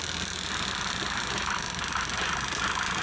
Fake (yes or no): no